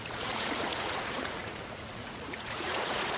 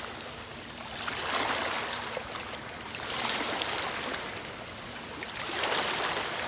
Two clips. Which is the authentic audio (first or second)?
second